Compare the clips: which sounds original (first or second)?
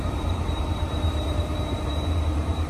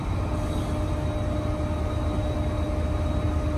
second